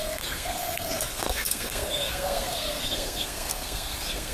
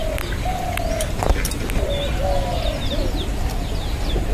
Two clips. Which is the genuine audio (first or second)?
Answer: second